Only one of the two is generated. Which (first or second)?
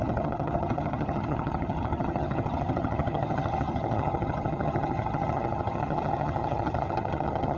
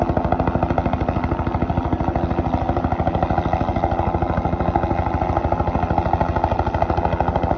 first